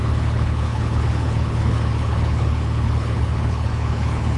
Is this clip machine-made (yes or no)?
yes